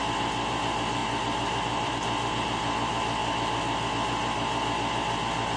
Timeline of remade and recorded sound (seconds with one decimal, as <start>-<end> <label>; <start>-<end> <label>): 0.0-1.0 recorded; 1.0-1.9 remade; 1.9-5.6 recorded